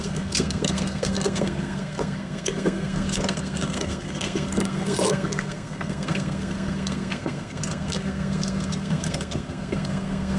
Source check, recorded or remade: remade